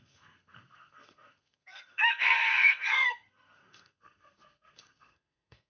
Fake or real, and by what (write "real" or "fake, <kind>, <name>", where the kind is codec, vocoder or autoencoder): fake, codec, SNAC